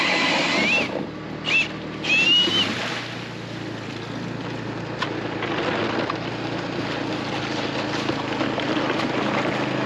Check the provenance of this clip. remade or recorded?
recorded